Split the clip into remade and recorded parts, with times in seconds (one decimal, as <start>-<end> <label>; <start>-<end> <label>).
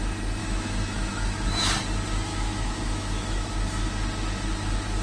0.0-0.4 recorded; 0.4-1.7 remade; 1.7-2.3 recorded; 2.3-3.9 remade; 3.9-5.0 recorded